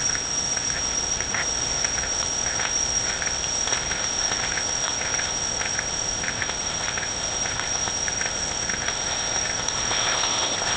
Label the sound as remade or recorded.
remade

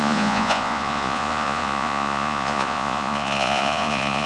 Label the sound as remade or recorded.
remade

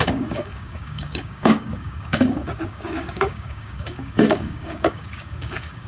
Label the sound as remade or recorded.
remade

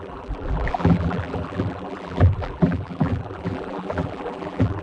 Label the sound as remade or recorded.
remade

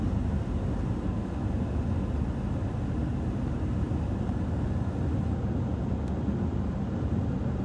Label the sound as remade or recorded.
recorded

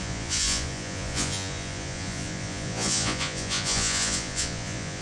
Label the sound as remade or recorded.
remade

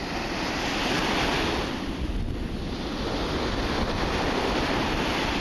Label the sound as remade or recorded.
recorded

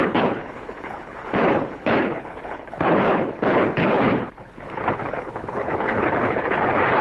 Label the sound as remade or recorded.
remade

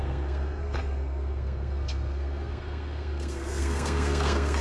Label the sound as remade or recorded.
remade